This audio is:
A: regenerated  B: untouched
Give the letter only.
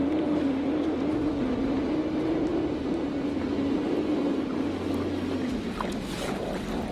B